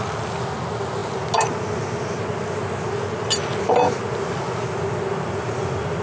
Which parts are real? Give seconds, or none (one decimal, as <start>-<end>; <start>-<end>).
0.0-6.0